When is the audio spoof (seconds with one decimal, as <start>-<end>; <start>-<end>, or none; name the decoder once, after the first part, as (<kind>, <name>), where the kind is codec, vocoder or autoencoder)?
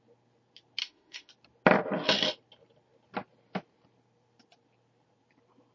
0.8-1.3 (autoencoder, DAC-VAE)